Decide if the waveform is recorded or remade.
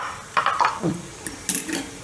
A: recorded